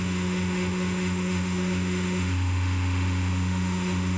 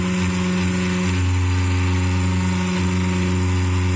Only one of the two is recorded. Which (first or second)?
second